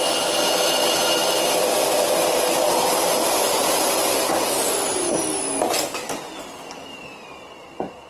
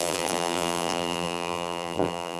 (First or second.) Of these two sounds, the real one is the first